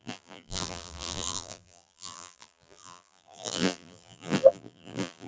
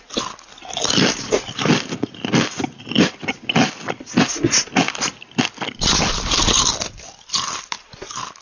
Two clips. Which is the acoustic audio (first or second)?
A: second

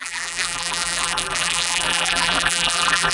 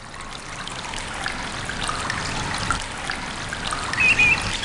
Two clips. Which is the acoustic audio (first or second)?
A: second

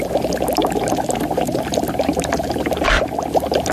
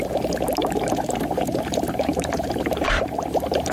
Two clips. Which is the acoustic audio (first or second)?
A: first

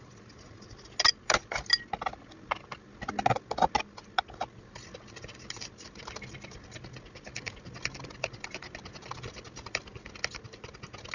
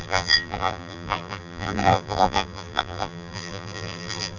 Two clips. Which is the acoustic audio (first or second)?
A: first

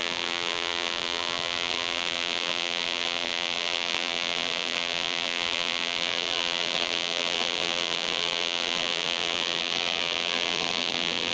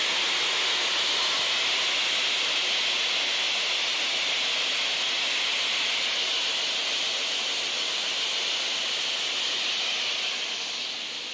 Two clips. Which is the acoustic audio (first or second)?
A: second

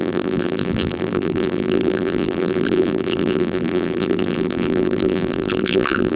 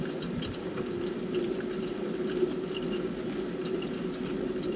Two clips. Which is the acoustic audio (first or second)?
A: second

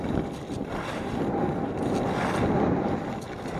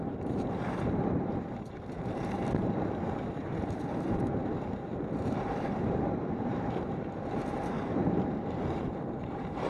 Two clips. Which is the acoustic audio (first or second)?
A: first